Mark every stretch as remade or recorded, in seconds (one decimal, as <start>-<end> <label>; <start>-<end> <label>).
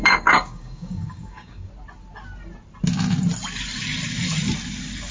0.0-1.7 remade; 1.7-5.1 recorded